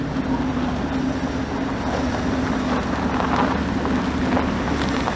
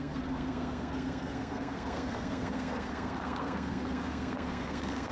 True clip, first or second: first